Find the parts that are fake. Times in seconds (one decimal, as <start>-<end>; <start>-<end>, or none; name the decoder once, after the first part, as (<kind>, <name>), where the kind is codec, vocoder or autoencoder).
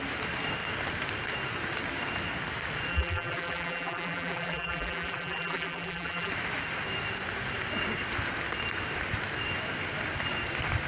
2.9-6.3 (vocoder, BigVGAN v2)